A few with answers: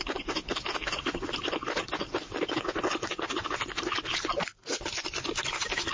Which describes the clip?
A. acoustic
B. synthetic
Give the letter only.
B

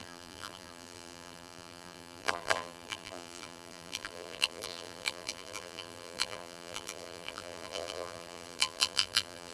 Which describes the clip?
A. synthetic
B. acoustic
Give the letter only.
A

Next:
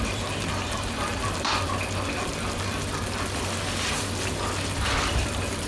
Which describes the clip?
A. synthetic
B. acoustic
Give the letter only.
A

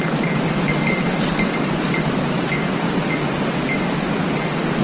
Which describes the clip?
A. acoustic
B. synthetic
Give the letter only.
A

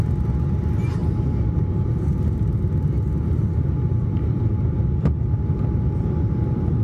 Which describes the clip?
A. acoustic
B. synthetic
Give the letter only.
A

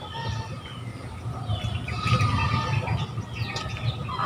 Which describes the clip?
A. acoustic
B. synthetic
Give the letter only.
A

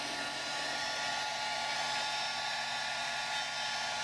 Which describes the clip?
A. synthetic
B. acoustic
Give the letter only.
B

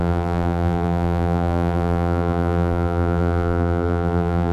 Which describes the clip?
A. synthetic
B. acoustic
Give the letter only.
A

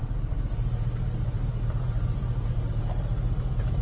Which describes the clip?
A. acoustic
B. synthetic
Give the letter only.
B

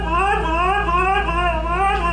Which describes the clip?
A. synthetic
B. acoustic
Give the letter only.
B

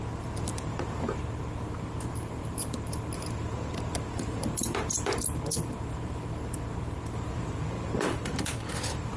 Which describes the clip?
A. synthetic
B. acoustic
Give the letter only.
A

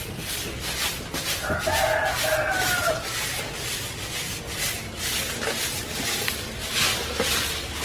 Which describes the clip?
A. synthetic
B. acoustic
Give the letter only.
B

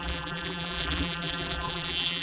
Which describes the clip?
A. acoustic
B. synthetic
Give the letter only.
B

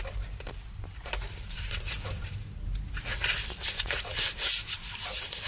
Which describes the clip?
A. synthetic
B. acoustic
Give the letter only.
A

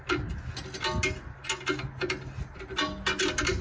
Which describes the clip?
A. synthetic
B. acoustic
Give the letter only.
B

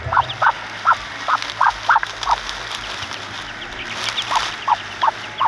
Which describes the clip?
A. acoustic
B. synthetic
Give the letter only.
A